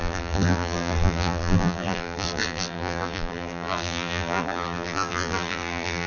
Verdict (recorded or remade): remade